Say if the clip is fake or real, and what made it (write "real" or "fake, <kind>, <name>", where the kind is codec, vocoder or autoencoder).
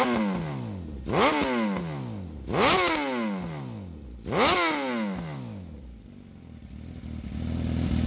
real